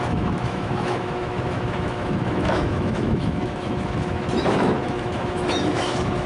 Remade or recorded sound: remade